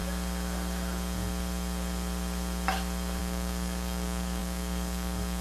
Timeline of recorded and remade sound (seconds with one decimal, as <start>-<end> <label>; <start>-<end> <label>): 0.0-3.2 recorded; 3.2-5.4 remade